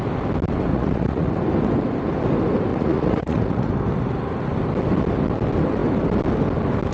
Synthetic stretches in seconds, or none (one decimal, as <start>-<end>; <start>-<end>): 0.7-1.3; 2.7-3.7